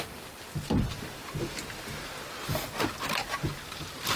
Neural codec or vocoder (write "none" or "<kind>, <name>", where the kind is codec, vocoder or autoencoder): none